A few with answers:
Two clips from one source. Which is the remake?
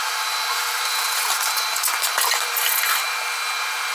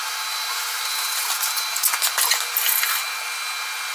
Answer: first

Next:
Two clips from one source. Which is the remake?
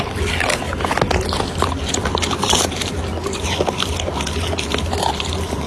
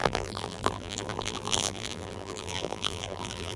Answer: second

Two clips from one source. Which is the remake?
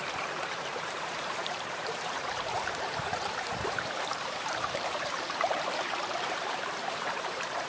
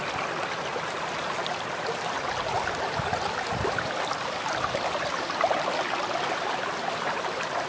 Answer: first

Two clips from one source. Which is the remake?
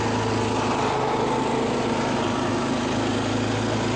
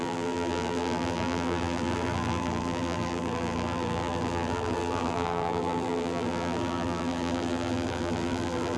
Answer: second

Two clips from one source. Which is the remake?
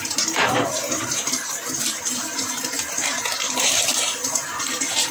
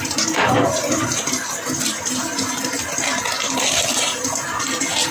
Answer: first